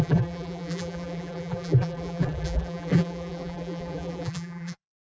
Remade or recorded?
remade